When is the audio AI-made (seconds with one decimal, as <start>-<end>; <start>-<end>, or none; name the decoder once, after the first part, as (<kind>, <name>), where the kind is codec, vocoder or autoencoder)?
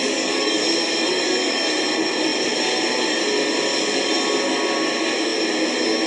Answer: 0.0-0.6 (codec, DAC); 1.1-1.7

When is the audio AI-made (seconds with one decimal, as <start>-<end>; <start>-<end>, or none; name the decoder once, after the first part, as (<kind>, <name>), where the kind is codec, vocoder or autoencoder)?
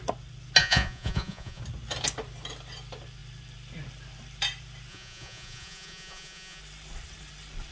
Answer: 0.6-1.6 (vocoder, Vocos); 4.9-6.6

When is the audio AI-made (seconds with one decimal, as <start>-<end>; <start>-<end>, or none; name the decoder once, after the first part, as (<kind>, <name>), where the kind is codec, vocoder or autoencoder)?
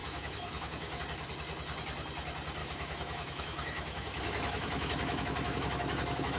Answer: 0.0-1.0 (autoencoder, DAC-VAE); 2.6-6.4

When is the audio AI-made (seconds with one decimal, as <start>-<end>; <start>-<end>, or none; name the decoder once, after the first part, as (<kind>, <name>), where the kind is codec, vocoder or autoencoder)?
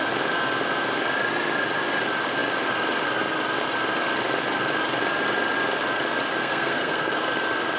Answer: 6.4-7.2 (codec, SNAC)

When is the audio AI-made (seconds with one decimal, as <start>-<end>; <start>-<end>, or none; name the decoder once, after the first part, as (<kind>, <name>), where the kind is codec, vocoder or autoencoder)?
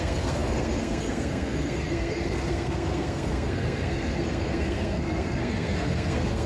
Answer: 0.0-6.5 (codec, SNAC)